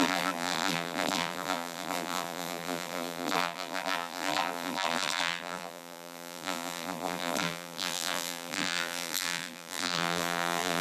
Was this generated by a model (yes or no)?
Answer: yes